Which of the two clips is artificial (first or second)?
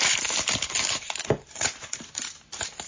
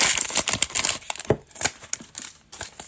first